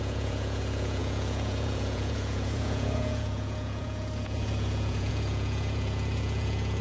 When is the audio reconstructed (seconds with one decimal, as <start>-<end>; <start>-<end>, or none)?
0.0-6.8